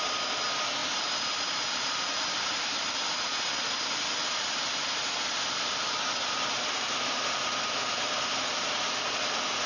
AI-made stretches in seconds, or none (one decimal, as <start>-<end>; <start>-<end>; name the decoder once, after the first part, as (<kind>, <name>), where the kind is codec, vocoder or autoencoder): none